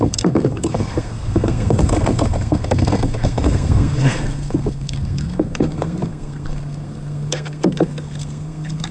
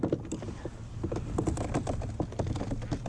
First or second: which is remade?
first